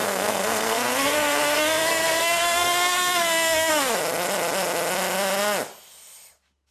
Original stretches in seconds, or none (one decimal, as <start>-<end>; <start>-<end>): 4.0-6.7